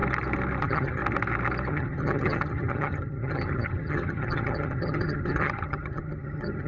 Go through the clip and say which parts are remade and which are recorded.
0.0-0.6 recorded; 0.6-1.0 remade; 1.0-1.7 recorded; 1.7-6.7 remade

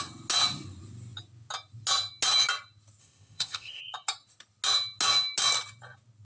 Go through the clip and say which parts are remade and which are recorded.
0.0-3.0 recorded; 3.0-3.8 remade; 3.8-6.2 recorded